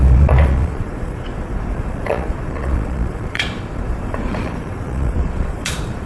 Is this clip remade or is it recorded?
remade